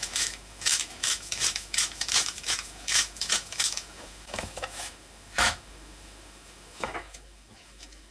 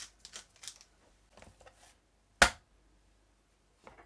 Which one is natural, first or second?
second